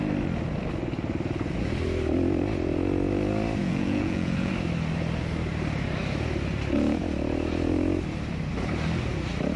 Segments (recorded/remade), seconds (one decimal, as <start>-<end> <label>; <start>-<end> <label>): 0.0-3.6 recorded; 3.6-4.5 remade; 4.5-9.6 recorded